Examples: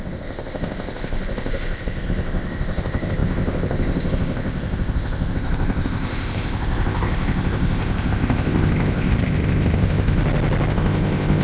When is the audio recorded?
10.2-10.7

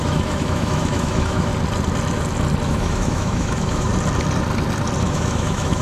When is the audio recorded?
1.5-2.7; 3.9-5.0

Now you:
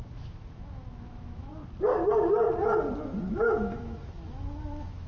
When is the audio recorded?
1.5-3.3